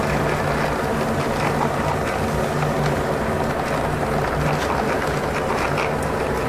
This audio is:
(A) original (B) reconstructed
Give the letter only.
A